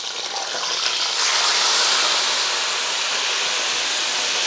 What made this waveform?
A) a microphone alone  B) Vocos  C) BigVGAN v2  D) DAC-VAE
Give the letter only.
A